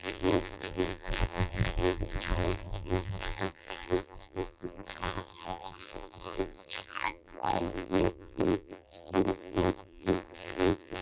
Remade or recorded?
remade